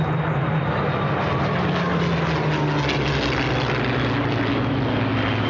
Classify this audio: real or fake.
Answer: real